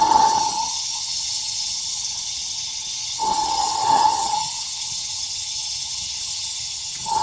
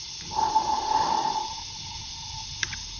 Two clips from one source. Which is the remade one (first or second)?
first